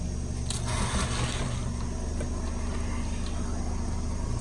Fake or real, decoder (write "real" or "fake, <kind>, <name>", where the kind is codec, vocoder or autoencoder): real